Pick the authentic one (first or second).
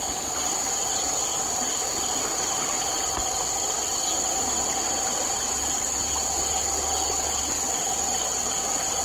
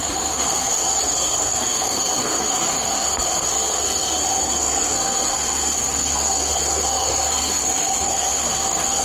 first